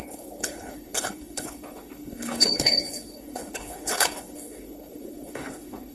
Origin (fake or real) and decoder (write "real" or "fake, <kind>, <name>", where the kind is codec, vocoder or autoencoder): fake, codec, HILCodec